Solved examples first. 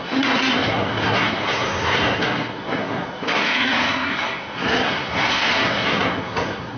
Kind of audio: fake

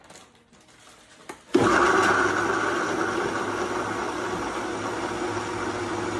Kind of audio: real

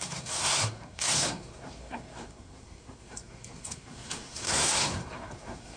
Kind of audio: fake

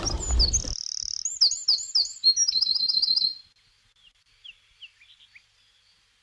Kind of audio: real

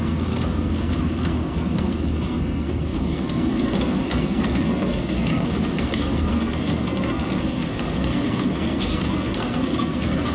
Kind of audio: fake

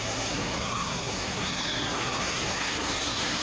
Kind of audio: fake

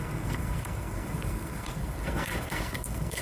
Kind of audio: fake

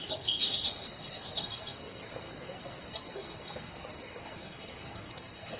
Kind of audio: fake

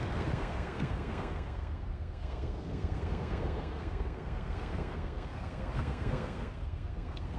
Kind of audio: fake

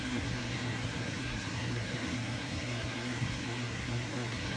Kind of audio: fake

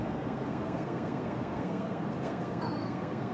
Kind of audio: fake